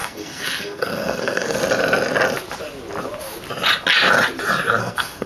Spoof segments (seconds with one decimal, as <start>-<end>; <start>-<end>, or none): 0.0-1.6; 4.8-5.3